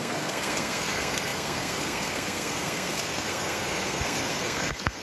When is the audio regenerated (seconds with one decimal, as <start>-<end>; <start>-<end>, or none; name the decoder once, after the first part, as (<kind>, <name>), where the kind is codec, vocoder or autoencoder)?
0.0-5.0 (codec, SNAC)